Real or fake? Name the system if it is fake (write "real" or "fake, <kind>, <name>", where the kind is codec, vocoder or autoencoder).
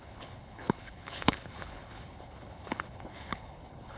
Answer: fake, codec, HILCodec